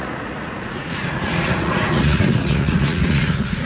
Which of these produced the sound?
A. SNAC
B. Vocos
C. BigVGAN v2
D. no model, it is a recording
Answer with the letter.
B